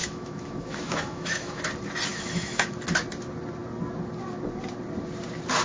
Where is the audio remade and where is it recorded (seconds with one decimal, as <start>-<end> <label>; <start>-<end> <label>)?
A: 0.0-1.6 remade; 1.6-2.1 recorded; 2.1-2.7 remade; 2.7-5.6 recorded